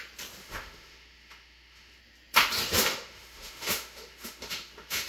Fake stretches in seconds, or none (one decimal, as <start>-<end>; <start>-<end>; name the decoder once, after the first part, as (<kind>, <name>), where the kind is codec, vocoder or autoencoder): 0.4-2.0 (autoencoder, DAC-VAE); 2.8-5.1